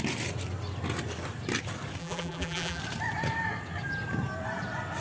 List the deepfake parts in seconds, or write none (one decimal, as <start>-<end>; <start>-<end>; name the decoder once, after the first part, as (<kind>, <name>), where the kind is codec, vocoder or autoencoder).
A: 2.0-2.8 (vocoder, BigVGAN v2)